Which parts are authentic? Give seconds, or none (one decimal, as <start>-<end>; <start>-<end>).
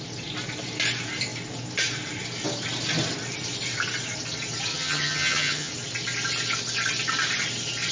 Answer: 0.0-4.7; 5.7-7.9